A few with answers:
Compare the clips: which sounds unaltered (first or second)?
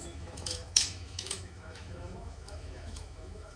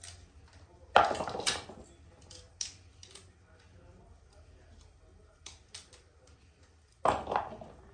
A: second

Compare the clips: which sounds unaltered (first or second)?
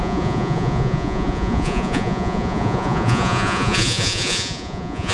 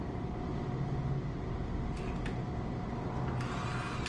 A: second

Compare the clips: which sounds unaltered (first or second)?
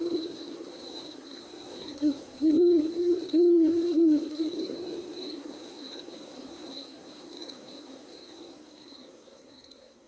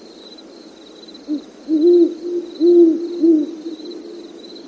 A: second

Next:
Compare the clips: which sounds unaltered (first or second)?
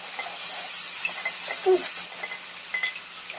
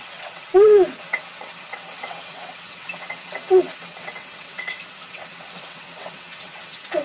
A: first